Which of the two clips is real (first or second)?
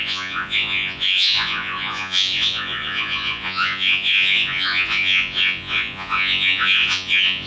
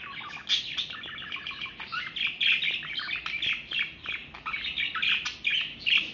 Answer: second